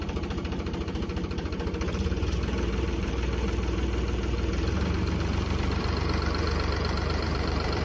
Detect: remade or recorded remade